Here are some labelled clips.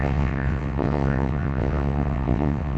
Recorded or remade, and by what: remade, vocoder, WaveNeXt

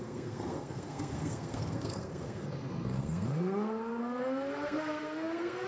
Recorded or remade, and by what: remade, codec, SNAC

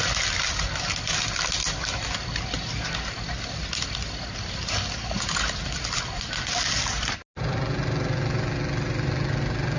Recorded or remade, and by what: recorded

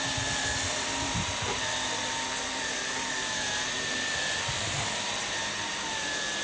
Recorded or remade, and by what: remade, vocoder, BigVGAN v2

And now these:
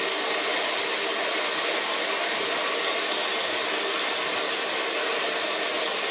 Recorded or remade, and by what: recorded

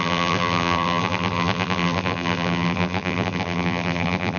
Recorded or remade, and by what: remade, vocoder, BigVGAN v2